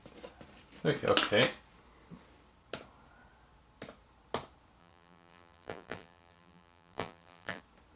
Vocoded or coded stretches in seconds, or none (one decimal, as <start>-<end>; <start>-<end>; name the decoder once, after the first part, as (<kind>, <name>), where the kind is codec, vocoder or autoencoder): 4.8-7.6 (vocoder, BigVGAN v2)